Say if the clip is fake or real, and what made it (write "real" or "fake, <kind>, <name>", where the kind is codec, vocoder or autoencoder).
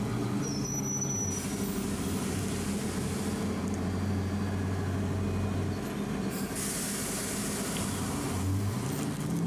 real